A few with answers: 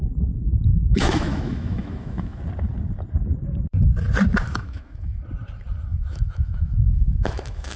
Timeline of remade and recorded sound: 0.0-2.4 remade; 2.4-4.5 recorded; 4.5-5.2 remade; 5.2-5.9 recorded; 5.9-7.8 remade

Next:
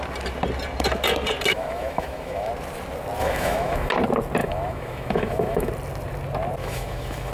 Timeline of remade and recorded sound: 0.0-1.5 recorded; 1.5-2.5 remade; 2.5-3.2 recorded; 3.2-3.9 remade; 3.9-4.4 recorded; 4.4-5.7 remade; 5.7-6.6 recorded; 6.6-7.3 remade

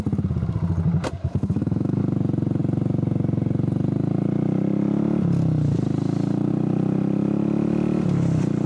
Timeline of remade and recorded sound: 0.0-1.2 recorded; 1.2-2.0 remade; 2.0-8.7 recorded

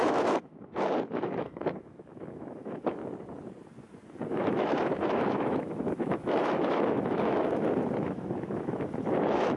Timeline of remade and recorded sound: 0.0-3.0 remade; 3.0-4.3 recorded; 4.3-9.6 remade

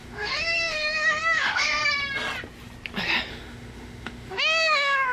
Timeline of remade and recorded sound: 0.0-1.8 remade; 1.8-3.3 recorded; 3.3-5.1 remade

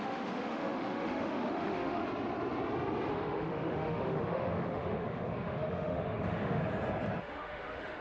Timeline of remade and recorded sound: 0.0-2.0 remade; 2.0-3.1 recorded; 3.1-6.6 remade; 6.6-7.2 recorded; 7.2-8.0 remade

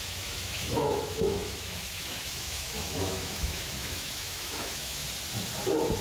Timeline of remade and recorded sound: 0.0-5.0 remade; 5.0-6.0 recorded